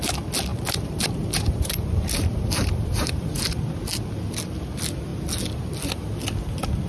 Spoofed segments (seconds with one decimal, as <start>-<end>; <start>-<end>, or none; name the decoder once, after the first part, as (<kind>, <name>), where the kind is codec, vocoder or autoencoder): 0.5-3.6 (vocoder, BigVGAN v2)